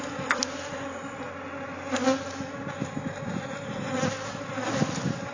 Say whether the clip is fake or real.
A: real